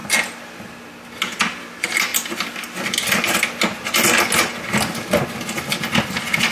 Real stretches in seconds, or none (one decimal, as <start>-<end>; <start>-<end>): 0.0-6.5